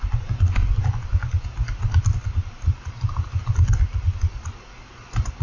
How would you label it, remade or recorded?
recorded